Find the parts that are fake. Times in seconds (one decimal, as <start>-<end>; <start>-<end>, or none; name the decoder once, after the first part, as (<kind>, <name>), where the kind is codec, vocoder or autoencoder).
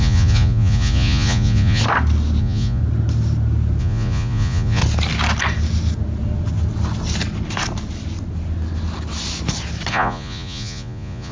0.0-1.8 (vocoder, Vocos); 2.4-2.8; 3.8-4.8; 9.9-11.3